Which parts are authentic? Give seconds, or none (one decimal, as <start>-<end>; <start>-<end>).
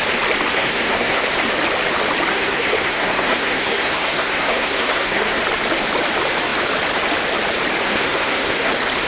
0.0-0.5; 1.2-2.3; 5.4-7.8; 8.7-9.1